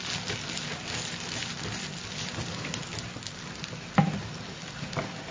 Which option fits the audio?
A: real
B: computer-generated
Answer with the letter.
A